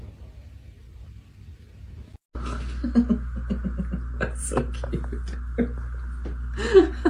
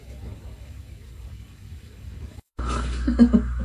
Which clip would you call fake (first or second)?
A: second